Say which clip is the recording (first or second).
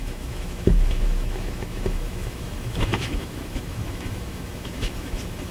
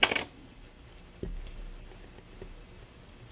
second